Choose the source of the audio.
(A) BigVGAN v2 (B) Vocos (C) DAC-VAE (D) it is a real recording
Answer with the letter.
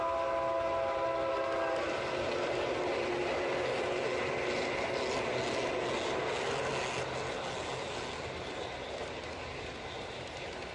D